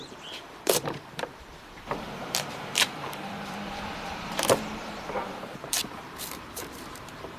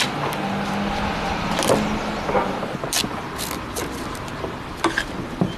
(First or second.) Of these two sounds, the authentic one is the second